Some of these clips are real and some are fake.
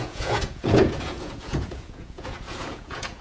fake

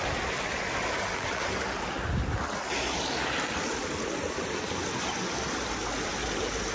real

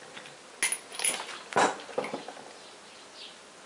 real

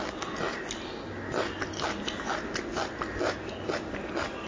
real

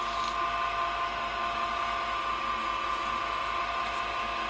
real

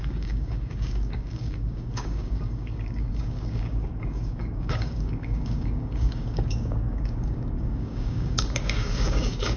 fake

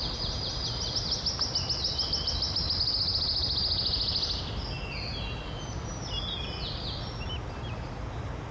real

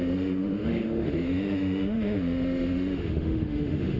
fake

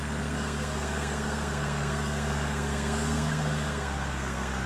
fake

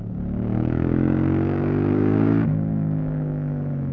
fake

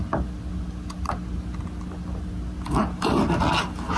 real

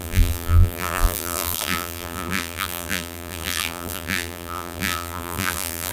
fake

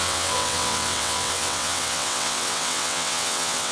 fake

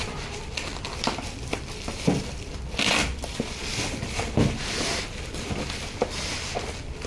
fake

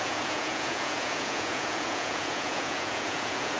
fake